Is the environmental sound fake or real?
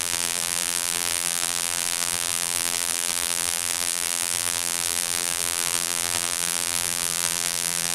fake